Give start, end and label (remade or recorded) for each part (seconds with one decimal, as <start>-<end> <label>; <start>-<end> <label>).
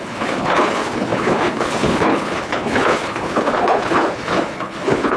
0.0-5.2 remade